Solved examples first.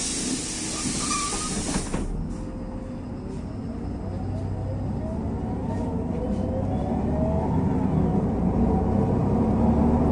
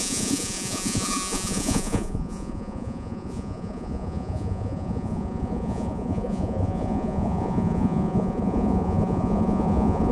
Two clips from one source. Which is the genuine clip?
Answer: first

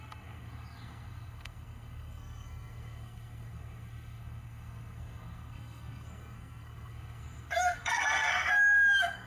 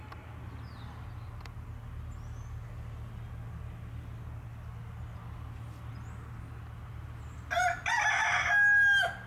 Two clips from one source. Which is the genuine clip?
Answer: second